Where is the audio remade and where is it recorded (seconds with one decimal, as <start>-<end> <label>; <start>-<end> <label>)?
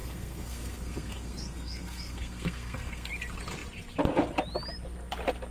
0.0-3.1 remade; 3.1-5.5 recorded